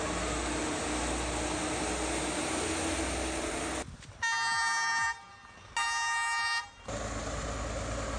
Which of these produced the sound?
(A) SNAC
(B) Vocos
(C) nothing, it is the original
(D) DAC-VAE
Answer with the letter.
C